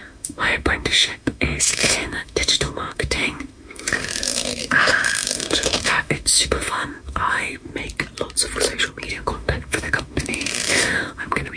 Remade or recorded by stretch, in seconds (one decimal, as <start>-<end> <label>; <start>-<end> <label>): 0.0-7.7 remade; 7.7-9.1 recorded; 9.1-11.6 remade

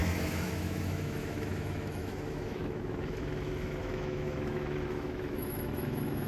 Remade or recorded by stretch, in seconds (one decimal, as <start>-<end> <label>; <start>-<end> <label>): 0.0-6.3 remade